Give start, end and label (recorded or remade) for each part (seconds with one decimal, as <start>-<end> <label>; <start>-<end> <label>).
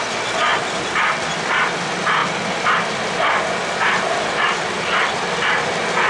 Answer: 0.0-0.5 recorded; 0.5-1.3 remade; 1.3-6.1 recorded